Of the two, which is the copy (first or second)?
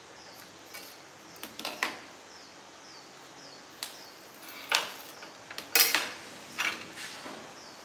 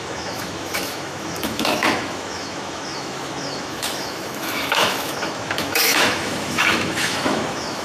second